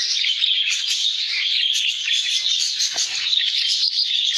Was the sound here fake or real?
fake